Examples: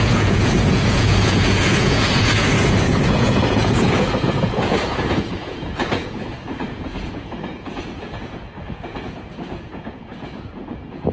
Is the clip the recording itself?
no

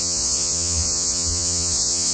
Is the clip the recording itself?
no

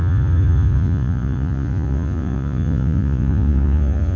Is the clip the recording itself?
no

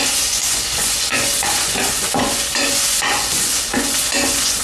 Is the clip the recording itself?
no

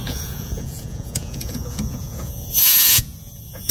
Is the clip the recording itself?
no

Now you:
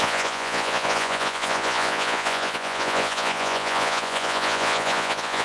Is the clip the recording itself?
no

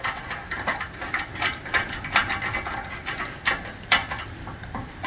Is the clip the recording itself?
yes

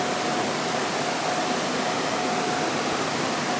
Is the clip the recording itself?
yes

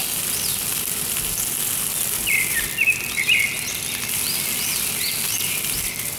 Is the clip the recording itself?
yes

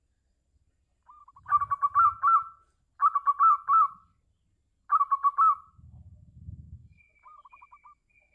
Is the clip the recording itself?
yes